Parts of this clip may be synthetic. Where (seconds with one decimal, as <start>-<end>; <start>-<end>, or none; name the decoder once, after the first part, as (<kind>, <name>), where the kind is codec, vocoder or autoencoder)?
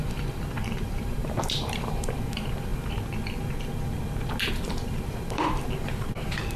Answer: 0.0-2.7 (vocoder, BigVGAN v2); 4.5-6.6